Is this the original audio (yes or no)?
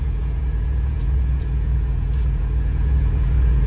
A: no